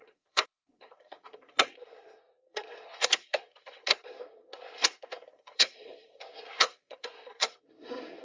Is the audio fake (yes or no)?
yes